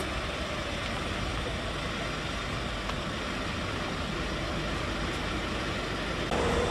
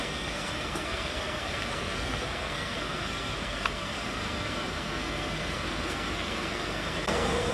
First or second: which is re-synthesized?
second